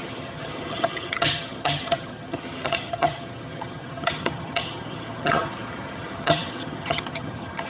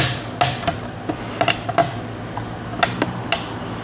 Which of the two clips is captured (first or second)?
second